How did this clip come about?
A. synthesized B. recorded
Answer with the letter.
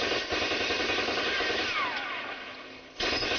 B